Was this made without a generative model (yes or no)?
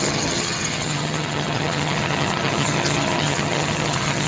no